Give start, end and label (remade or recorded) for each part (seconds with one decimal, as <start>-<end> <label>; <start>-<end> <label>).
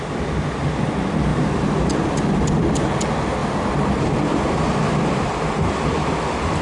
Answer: 0.0-1.3 recorded; 1.3-3.0 remade; 3.0-3.4 recorded; 3.4-5.6 remade; 5.6-6.6 recorded